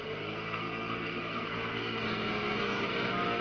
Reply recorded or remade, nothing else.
remade